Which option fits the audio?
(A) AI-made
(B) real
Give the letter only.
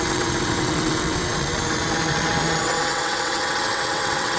A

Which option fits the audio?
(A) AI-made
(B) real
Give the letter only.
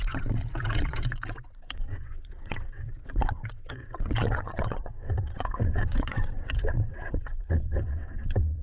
A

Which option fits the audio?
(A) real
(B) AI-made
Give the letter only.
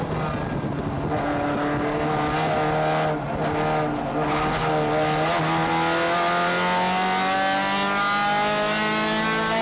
A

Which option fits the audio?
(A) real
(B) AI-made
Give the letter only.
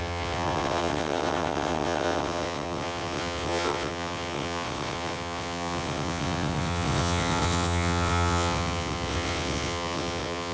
B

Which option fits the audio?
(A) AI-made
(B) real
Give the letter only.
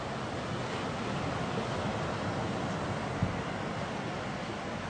B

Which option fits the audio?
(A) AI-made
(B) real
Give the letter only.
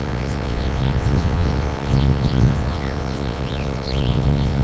A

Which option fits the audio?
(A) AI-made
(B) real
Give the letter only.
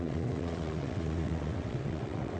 A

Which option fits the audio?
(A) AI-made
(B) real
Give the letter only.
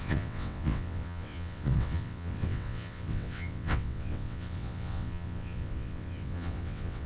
A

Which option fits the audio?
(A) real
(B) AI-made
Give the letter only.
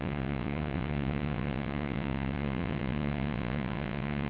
B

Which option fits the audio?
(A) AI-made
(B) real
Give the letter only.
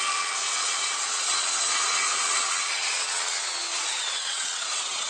A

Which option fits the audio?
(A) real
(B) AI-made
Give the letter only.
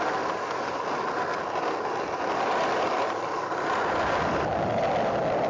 A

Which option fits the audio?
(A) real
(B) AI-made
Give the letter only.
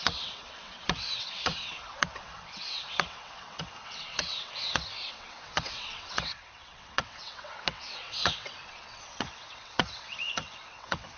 B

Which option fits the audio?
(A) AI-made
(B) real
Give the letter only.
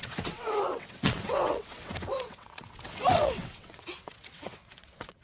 A